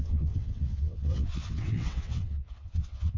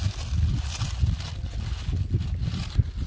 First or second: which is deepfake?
first